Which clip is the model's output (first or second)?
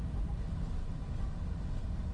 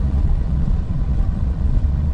second